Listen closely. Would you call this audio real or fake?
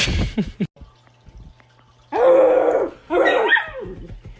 real